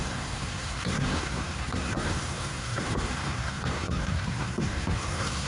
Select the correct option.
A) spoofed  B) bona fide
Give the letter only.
A